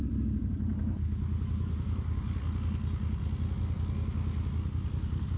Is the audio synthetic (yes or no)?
no